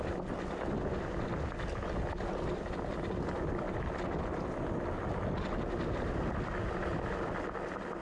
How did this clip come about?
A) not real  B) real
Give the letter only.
B